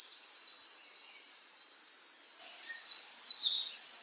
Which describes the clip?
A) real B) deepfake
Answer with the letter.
A